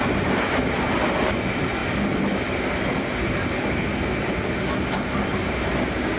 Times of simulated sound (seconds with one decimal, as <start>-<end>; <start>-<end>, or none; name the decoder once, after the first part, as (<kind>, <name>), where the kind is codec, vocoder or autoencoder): none